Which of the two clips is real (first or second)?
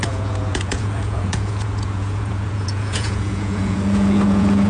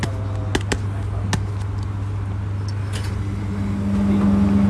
second